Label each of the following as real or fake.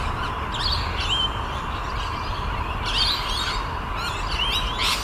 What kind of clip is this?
real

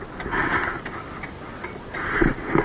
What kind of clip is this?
real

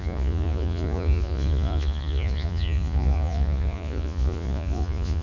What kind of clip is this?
fake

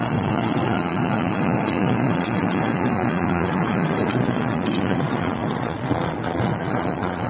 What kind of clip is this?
fake